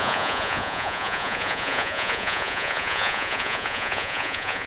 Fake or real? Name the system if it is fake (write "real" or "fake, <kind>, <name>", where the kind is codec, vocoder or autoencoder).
fake, vocoder, Vocos